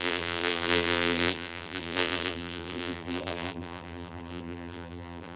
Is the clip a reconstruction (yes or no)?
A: yes